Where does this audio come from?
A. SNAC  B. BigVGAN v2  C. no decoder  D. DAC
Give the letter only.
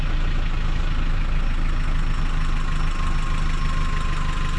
C